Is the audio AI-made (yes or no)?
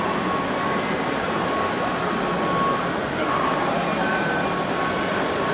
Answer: no